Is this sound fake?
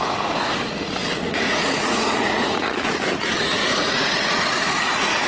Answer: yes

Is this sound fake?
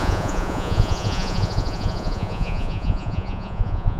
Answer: yes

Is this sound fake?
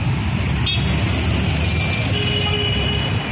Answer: no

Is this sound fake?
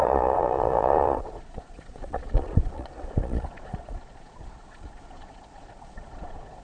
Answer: yes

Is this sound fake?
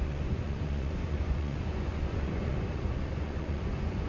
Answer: yes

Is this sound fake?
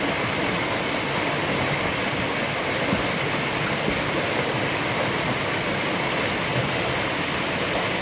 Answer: no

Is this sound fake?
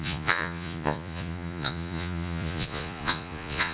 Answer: yes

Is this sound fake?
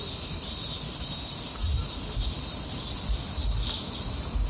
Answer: no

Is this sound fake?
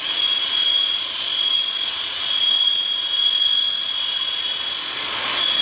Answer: yes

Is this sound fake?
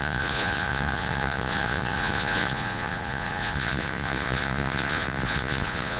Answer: yes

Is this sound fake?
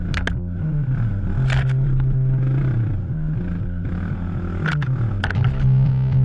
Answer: no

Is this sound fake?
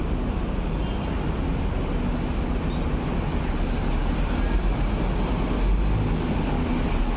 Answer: no